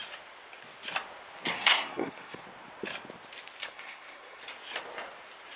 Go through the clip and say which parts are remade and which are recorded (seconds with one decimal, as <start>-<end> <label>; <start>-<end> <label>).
0.0-1.5 recorded; 1.5-2.4 remade; 2.4-3.6 recorded; 3.6-4.4 remade; 4.4-5.6 recorded